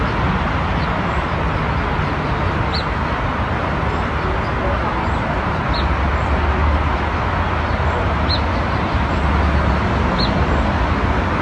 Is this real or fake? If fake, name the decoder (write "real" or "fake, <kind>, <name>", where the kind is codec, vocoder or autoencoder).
real